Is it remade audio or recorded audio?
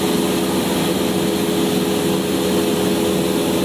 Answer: recorded